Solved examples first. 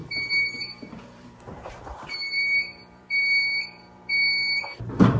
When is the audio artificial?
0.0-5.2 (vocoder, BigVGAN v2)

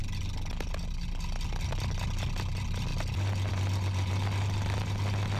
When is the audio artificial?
none

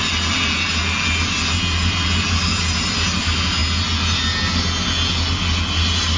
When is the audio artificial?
none

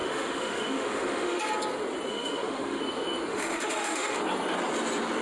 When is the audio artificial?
0.0-1.4 (autoencoder, DAC-VAE); 2.1-2.8; 3.3-4.2

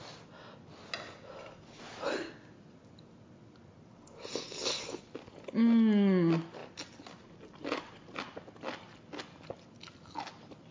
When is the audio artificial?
none

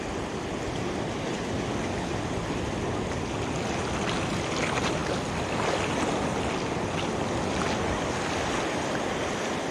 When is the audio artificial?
none